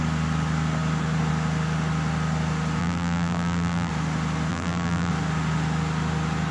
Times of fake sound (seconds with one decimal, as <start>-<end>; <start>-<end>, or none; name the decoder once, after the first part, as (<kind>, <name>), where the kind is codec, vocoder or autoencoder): 2.8-3.9 (vocoder, BigVGAN v2); 4.5-5.1